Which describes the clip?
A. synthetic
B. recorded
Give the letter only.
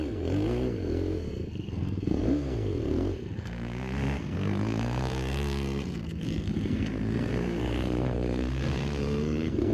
A